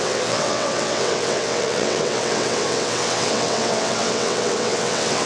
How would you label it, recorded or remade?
remade